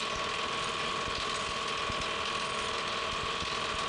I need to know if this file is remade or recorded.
recorded